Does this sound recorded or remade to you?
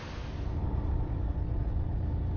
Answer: recorded